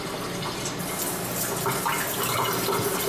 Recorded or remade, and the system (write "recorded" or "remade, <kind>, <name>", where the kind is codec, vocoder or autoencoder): recorded